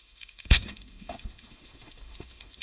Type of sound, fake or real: fake